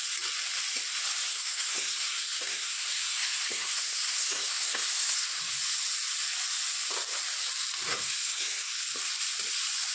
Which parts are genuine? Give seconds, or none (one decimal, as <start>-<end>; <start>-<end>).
0.0-1.3; 5.5-7.9; 8.8-9.9